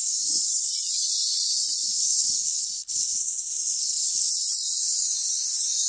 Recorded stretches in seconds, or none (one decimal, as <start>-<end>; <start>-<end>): 0.7-1.8; 4.3-5.9